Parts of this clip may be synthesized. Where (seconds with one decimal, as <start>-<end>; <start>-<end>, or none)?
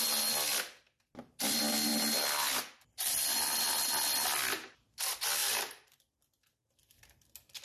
5.4-6.0